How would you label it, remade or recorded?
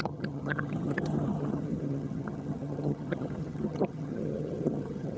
remade